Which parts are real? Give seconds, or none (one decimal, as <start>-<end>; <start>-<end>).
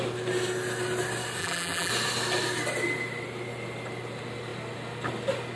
0.0-1.4; 1.9-5.6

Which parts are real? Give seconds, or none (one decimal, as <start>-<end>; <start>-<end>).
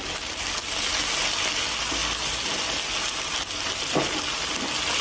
0.0-5.0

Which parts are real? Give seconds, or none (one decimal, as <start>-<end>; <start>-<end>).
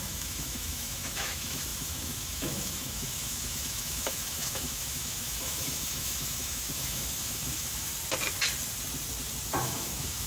7.9-9.6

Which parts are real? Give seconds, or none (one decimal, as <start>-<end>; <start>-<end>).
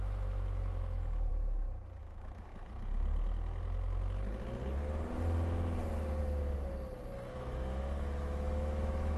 1.3-2.0; 2.5-6.2; 6.7-7.3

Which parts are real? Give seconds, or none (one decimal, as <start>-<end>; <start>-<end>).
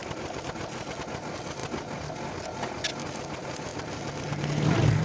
0.0-5.0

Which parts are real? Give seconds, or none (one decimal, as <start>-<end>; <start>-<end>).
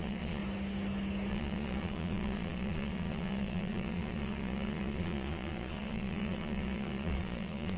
0.4-1.3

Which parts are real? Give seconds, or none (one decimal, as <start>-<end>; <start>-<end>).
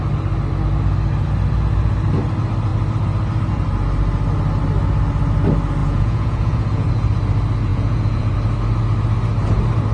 0.0-5.8; 6.9-7.7; 8.3-9.9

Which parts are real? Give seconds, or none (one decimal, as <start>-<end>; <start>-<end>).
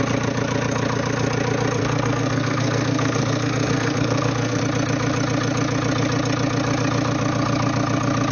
0.0-1.8; 4.6-8.3